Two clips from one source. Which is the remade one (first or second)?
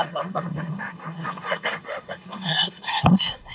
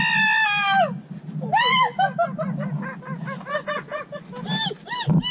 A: first